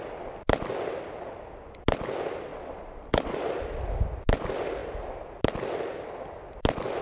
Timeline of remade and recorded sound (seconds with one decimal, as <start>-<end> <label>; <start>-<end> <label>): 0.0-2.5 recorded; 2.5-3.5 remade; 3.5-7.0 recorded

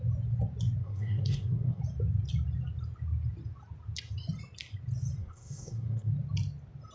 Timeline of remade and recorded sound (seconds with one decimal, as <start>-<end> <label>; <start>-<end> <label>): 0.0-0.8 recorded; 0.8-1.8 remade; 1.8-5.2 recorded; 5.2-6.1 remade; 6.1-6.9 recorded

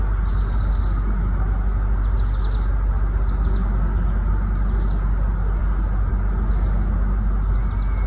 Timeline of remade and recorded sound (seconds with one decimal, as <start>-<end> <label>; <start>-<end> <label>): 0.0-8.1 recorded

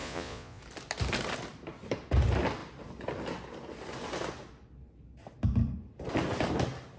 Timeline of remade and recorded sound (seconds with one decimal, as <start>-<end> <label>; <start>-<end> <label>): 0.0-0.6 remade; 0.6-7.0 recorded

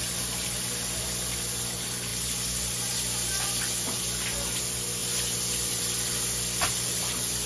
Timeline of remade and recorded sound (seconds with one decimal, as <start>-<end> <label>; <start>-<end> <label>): 0.0-7.5 recorded